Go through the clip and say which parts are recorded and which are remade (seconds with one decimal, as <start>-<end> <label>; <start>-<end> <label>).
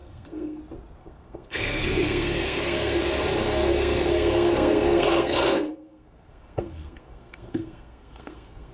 0.0-0.6 remade; 0.6-1.0 recorded; 1.0-3.0 remade; 3.0-3.4 recorded; 3.4-8.7 remade